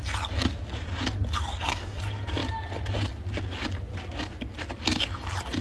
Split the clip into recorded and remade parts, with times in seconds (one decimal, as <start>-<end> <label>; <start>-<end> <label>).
0.0-1.5 recorded; 1.5-2.0 remade; 2.0-5.6 recorded